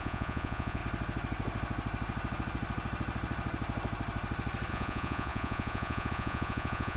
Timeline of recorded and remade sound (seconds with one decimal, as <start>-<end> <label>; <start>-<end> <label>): 0.0-0.8 remade; 0.8-4.7 recorded; 4.7-7.0 remade